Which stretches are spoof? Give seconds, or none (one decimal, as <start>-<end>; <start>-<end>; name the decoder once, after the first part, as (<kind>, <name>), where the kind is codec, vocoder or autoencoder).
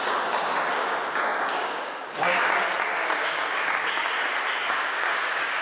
1.3-2.4 (codec, DAC); 3.0-4.1; 4.6-5.6